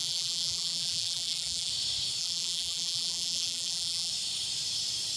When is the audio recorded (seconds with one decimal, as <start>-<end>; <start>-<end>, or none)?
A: 1.7-2.2; 4.1-5.2